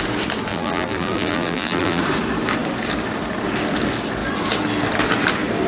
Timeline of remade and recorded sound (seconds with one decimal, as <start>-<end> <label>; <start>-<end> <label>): 0.0-0.5 recorded; 0.5-2.0 remade; 2.0-5.7 recorded